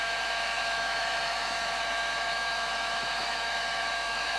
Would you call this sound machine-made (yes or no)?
yes